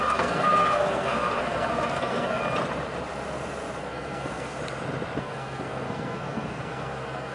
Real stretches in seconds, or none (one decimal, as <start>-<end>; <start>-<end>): 2.4-3.8; 4.6-5.2